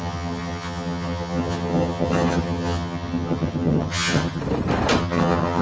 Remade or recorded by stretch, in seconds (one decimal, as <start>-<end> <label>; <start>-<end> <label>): 0.0-4.4 remade; 4.4-5.0 recorded; 5.0-5.6 remade